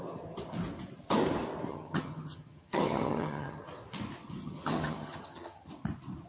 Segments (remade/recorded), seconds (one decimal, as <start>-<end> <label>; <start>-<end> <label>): 0.0-1.7 recorded; 1.7-3.6 remade; 3.6-4.4 recorded; 4.4-5.7 remade; 5.7-6.3 recorded